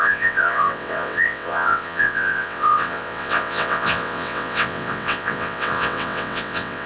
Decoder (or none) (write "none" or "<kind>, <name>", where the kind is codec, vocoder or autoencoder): vocoder, WaveNeXt